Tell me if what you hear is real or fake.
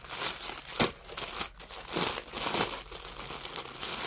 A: real